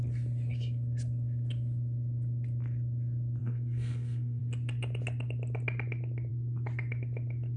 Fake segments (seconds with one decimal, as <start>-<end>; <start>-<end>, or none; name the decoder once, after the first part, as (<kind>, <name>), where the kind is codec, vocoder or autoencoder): 3.4-4.4 (codec, SNAC)